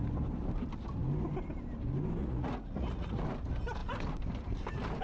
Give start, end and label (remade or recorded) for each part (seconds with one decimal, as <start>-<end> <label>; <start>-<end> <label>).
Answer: 0.0-2.2 recorded; 2.2-3.2 remade; 3.2-5.0 recorded